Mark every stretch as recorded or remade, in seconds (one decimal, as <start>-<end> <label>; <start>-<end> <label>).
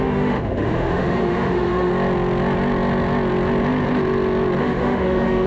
0.0-1.9 remade; 1.9-4.6 recorded; 4.6-5.5 remade